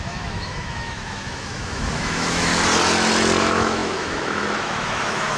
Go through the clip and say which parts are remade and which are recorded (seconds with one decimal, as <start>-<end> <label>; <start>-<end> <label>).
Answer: 0.0-2.5 remade; 2.5-3.4 recorded; 3.4-5.4 remade